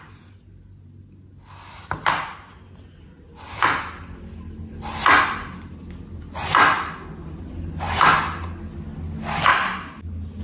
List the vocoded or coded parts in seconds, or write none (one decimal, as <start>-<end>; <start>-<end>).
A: none

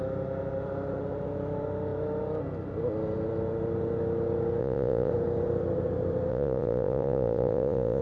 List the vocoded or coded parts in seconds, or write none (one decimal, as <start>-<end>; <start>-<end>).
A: 4.6-5.1; 6.3-8.0